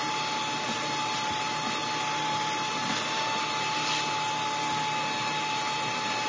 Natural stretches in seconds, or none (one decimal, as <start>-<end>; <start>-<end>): 0.0-6.3

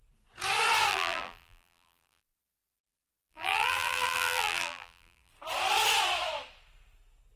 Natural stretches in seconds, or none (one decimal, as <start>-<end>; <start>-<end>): 0.0-0.9; 5.3-7.4

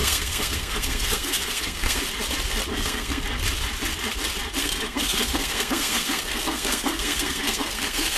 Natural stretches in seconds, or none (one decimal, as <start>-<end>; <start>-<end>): 2.0-2.7; 3.2-4.6

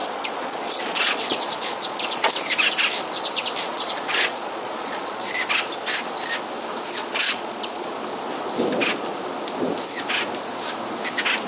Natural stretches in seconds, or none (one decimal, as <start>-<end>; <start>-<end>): 2.3-3.6; 5.3-7.0; 7.9-11.5